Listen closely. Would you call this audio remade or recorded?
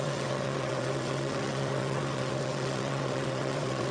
remade